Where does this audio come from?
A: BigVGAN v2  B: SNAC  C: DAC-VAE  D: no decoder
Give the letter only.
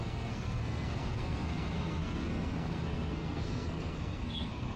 B